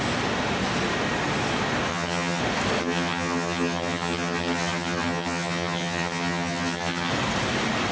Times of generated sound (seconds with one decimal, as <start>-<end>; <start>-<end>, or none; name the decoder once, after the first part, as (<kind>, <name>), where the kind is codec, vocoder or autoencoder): 1.9-2.4 (vocoder, HiFi-GAN); 2.8-7.1